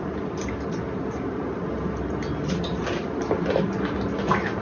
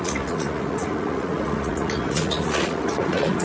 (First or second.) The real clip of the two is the first